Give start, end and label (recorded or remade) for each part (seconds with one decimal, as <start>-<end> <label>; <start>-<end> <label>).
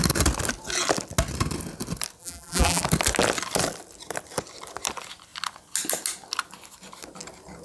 0.0-2.2 recorded; 2.2-2.8 remade; 2.8-7.6 recorded